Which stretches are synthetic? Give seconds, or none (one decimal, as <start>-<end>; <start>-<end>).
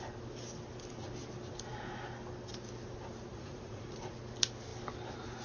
3.3-4.1